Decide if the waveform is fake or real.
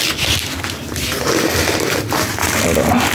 real